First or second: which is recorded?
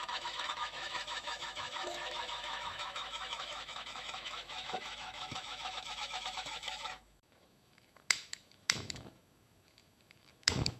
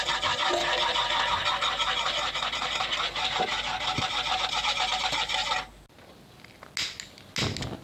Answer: second